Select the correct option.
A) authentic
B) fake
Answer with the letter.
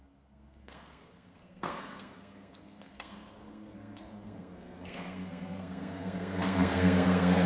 B